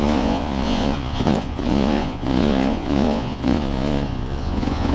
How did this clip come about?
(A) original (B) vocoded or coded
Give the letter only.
B